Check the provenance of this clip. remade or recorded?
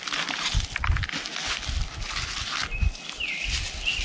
recorded